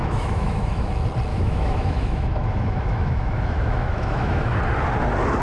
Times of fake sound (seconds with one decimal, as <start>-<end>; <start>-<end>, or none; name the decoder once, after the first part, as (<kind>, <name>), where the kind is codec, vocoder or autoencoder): 0.0-0.9 (autoencoder, DAC-VAE); 1.3-4.5